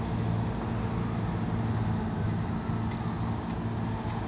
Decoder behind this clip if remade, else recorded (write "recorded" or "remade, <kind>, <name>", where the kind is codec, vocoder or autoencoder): recorded